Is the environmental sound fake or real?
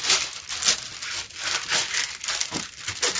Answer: real